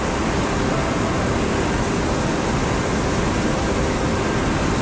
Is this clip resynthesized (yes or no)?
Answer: no